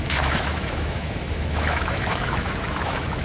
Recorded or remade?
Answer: remade